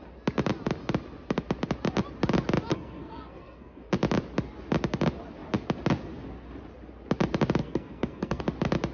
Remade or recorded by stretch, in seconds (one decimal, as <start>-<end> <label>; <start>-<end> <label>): 0.0-2.7 recorded; 2.7-3.9 remade; 3.9-7.6 recorded; 7.6-8.4 remade; 8.4-8.9 recorded